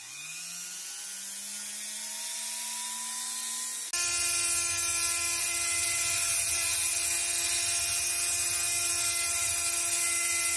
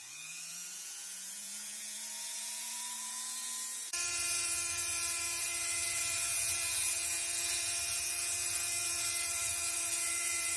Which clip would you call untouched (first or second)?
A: first